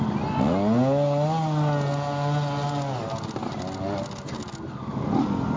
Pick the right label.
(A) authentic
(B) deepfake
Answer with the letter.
A